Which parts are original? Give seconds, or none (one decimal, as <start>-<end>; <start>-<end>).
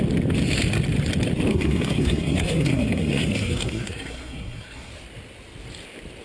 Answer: 0.0-1.5; 4.9-6.2